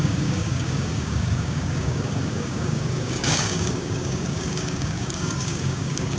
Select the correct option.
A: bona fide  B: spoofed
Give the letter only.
B